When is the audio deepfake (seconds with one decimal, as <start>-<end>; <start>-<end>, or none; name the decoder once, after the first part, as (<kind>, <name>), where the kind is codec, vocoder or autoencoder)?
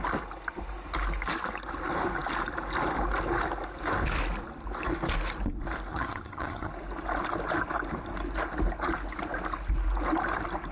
5.9-6.7 (vocoder, HiFi-GAN)